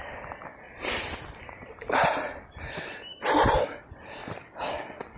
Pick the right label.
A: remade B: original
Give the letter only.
B